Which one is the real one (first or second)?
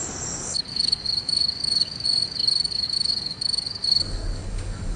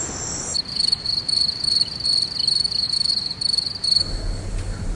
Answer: second